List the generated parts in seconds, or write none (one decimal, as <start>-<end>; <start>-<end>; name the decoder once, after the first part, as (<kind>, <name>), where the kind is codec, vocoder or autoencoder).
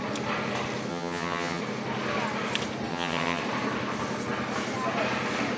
0.9-1.6 (vocoder, HiFi-GAN); 2.9-3.4